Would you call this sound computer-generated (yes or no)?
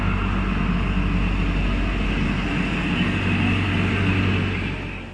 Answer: no